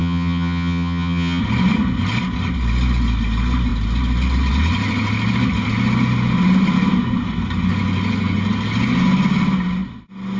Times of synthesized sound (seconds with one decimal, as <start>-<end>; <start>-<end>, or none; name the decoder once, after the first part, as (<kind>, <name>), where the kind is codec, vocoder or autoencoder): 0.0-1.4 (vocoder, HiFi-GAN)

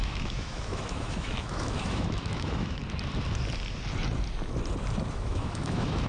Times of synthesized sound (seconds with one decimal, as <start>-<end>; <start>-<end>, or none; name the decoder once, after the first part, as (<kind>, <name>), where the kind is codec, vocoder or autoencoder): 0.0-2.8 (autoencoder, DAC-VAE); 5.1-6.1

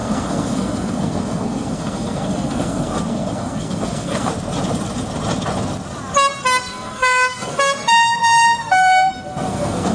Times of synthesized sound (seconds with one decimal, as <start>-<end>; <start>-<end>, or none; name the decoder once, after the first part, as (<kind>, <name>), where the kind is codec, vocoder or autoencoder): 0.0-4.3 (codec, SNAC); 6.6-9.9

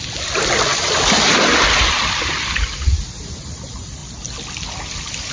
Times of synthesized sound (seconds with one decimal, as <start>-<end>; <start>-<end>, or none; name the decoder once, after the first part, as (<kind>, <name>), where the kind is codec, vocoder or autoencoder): none

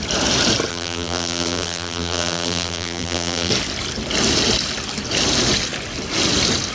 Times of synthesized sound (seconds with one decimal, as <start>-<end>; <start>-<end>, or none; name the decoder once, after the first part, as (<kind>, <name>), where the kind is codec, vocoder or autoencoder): 0.7-3.5 (vocoder, BigVGAN v2)

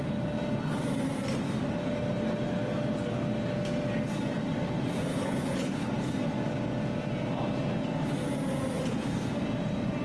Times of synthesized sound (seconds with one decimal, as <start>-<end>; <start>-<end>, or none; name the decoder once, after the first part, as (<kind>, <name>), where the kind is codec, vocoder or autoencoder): 5.1-5.9 (codec, HILCodec)

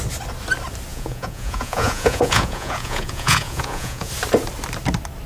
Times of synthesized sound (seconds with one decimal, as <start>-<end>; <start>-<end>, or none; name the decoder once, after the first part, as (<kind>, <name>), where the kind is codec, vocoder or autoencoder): 0.9-4.1 (vocoder, Vocos)

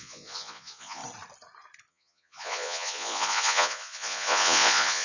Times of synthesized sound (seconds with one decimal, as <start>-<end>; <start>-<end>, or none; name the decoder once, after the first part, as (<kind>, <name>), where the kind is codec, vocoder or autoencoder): 0.0-1.0 (vocoder, Vocos); 1.9-5.0